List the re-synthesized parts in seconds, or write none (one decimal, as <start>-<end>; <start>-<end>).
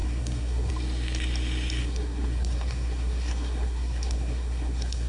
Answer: 0.0-0.7; 1.8-5.1